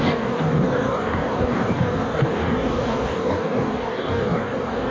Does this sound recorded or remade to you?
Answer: remade